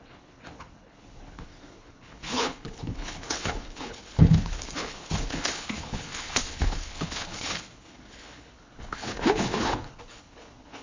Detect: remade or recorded remade